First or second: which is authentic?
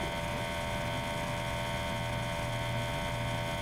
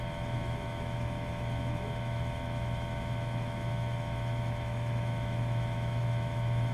first